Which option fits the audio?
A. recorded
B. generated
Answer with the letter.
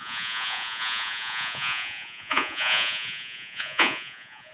B